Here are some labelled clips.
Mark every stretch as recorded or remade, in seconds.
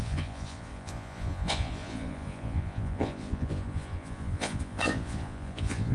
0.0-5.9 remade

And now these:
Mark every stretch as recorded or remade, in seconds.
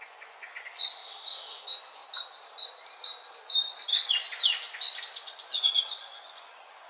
0.0-1.0 remade; 1.0-1.5 recorded; 1.5-2.0 remade; 2.0-3.9 recorded; 3.9-6.9 remade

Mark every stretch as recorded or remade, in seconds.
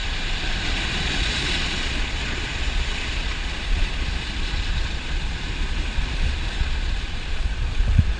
0.0-0.7 recorded; 0.7-8.2 remade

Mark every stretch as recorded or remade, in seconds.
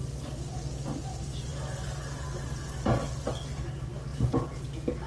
0.0-4.1 recorded; 4.1-4.6 remade; 4.6-5.1 recorded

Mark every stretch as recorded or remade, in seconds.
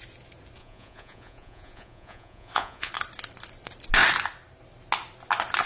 0.0-0.6 recorded; 0.6-2.9 remade; 2.9-5.7 recorded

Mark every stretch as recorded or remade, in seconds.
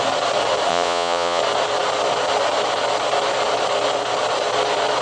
0.0-0.7 recorded; 0.7-1.4 remade; 1.4-5.0 recorded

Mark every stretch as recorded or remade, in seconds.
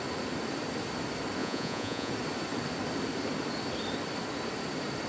0.0-1.4 recorded; 1.4-2.1 remade; 2.1-5.1 recorded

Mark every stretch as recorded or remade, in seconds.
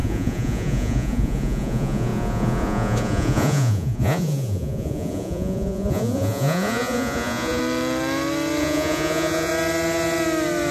0.0-7.6 remade; 7.6-8.6 recorded; 8.6-9.5 remade; 9.5-10.7 recorded